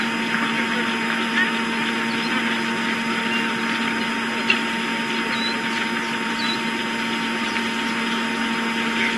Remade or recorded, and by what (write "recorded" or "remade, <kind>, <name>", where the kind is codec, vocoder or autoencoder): recorded